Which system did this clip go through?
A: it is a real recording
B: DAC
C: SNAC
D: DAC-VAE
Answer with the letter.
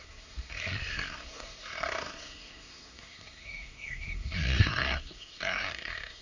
C